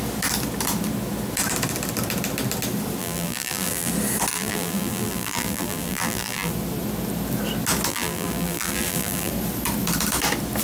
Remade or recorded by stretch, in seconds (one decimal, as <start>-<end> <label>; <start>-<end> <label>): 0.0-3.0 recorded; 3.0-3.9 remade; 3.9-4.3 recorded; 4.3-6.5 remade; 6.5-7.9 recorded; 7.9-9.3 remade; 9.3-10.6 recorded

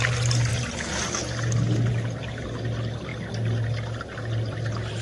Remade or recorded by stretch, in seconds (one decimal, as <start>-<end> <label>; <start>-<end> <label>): 0.0-5.0 recorded

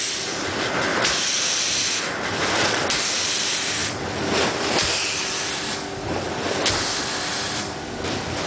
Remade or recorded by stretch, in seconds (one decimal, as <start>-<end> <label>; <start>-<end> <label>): 0.0-0.9 recorded; 0.9-1.8 remade; 1.8-8.5 recorded

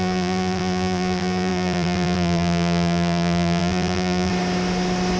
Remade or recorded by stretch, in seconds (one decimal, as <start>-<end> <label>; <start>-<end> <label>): 0.0-4.3 remade; 4.3-5.2 recorded

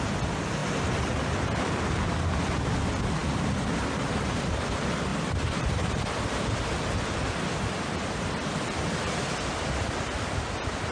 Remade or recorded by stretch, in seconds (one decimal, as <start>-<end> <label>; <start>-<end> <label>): 0.0-3.2 recorded; 3.2-3.7 remade; 3.7-5.1 recorded; 5.1-9.2 remade; 9.2-10.9 recorded

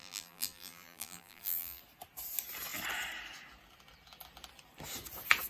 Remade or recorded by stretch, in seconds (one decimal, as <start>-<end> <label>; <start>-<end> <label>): 0.0-1.8 remade; 1.8-5.5 recorded

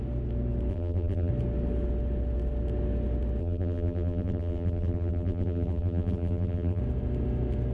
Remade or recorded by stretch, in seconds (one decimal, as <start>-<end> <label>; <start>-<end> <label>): 0.0-0.7 recorded; 0.7-1.3 remade; 1.3-3.4 recorded; 3.4-6.8 remade; 6.8-7.7 recorded